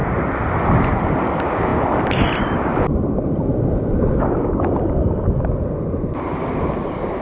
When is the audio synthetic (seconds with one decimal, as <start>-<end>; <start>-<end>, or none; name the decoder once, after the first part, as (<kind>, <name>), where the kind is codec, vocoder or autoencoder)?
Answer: none